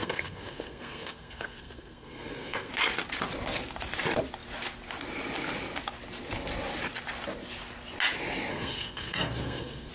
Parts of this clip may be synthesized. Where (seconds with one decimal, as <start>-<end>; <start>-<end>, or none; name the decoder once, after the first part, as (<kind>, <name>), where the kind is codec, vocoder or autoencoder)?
0.0-2.7 (codec, SNAC); 8.5-9.9